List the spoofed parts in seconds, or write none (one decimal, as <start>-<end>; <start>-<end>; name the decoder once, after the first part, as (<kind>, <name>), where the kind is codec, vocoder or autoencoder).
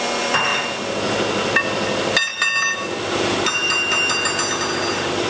none